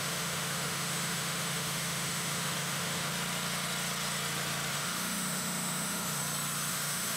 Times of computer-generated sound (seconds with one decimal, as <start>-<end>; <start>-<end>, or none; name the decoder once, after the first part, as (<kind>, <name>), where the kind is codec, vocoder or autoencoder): 0.0-3.1 (autoencoder, DAC-VAE); 4.7-6.2; 6.7-7.2